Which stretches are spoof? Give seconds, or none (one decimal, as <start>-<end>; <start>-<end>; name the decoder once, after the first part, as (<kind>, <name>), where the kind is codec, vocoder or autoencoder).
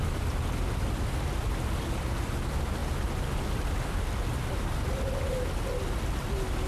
none